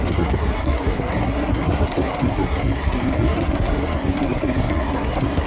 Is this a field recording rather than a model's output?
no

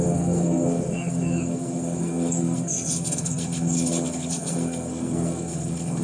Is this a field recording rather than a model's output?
no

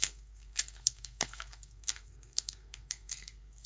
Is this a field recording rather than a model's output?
no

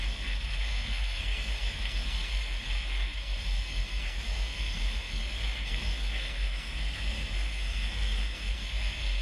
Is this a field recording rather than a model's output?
no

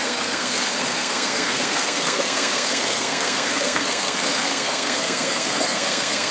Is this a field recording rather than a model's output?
no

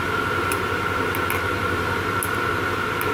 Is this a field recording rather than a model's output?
yes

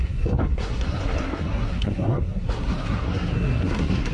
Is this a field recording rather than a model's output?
no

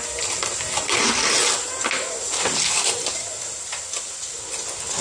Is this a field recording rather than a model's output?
yes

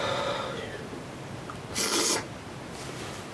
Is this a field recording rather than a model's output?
yes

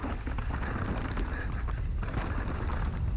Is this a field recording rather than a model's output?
yes